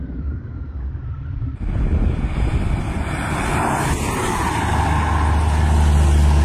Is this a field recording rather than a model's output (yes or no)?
yes